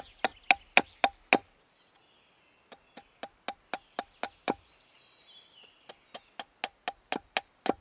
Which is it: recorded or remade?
recorded